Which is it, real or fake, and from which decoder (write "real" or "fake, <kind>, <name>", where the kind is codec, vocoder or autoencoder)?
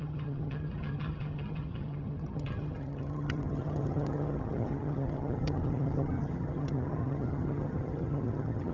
fake, vocoder, HiFi-GAN